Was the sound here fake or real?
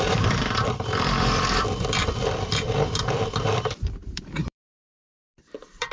fake